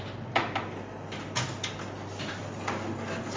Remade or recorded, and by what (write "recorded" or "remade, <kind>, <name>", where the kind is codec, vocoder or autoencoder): recorded